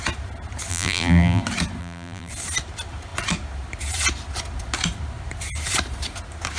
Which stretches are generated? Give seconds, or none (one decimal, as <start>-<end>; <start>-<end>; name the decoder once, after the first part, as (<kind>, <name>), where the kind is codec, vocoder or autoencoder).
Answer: 0.7-1.4 (vocoder, BigVGAN v2); 1.8-2.3